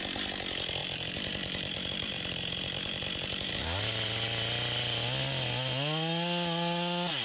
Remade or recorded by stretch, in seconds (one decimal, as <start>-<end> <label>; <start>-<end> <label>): 0.0-0.8 recorded; 0.8-3.5 remade; 3.5-7.2 recorded